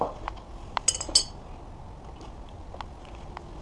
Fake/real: real